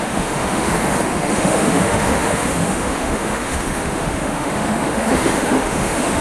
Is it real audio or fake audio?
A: fake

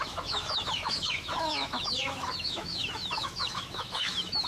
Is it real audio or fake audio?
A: fake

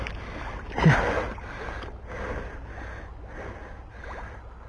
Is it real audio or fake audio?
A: real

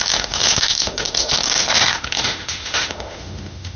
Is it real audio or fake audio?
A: fake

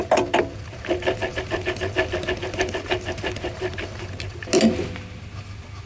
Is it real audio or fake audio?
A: real